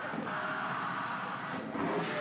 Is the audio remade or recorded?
recorded